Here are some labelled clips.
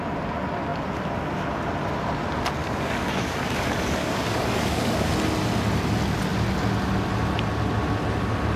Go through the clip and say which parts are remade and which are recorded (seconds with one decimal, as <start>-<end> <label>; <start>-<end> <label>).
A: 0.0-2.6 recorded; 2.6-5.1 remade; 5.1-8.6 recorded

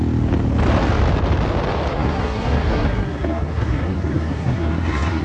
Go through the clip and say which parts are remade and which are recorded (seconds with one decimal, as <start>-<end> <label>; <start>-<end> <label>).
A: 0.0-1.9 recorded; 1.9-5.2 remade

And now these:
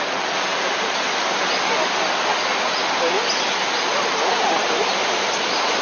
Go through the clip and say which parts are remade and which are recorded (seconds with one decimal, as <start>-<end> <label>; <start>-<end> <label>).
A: 0.0-5.8 recorded